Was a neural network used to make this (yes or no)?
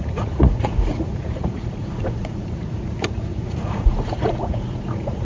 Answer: yes